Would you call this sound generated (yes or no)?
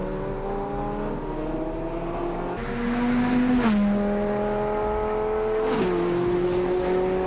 no